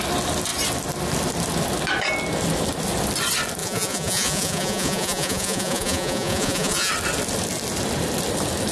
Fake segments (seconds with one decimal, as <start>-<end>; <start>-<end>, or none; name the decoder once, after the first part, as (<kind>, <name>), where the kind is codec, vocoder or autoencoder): 3.6-6.9 (vocoder, Vocos)